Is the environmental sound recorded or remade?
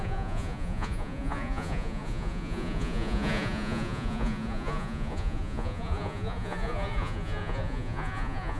remade